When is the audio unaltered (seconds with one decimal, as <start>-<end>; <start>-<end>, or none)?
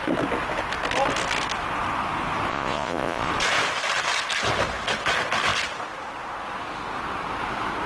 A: 0.0-2.5; 3.3-7.9